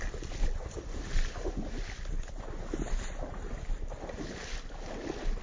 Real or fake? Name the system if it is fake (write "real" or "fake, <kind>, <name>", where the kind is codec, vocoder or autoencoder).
real